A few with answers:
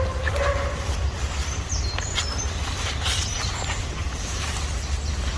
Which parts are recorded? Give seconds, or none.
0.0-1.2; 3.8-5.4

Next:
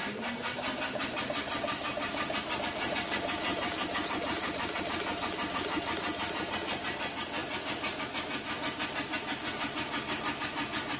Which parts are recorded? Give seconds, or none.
2.6-3.5; 4.8-11.0

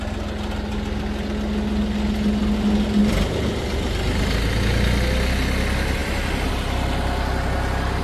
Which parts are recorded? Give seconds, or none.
0.0-3.0; 3.6-6.0; 6.5-8.0

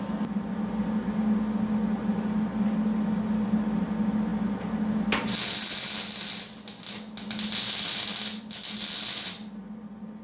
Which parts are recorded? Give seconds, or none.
0.0-10.2

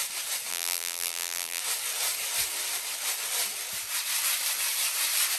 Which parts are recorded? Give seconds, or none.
0.0-0.5; 1.6-5.4

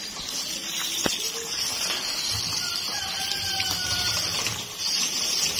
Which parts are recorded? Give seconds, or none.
0.0-0.6; 4.0-5.6